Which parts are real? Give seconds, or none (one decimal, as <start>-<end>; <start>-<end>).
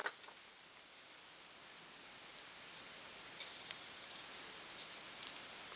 0.0-3.5; 4.2-5.8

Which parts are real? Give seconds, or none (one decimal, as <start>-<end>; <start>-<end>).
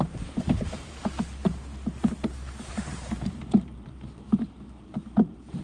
1.0-2.7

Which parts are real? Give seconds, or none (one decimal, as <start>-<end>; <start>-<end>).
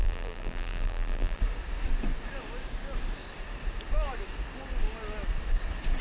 1.4-6.0